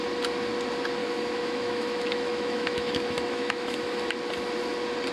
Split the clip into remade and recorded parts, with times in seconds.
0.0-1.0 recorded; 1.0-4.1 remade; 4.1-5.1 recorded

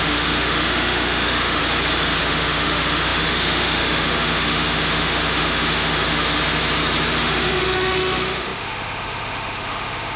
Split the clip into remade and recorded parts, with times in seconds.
0.0-1.6 remade; 1.6-2.2 recorded; 2.2-6.4 remade; 6.4-7.2 recorded; 7.2-10.2 remade

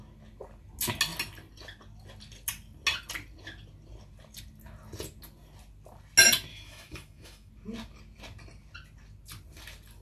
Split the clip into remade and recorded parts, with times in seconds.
0.0-6.5 recorded; 6.5-7.5 remade; 7.5-10.0 recorded

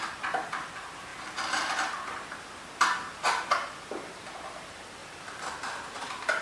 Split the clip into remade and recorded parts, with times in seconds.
0.0-6.4 recorded

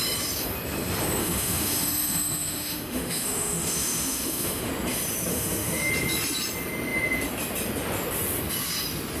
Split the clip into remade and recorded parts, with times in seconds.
0.0-1.2 recorded; 1.2-4.7 remade; 4.7-5.3 recorded; 5.3-5.9 remade; 5.9-9.2 recorded